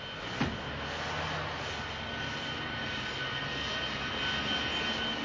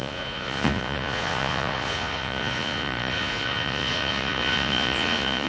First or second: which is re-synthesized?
second